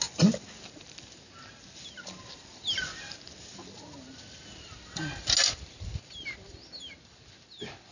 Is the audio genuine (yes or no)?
yes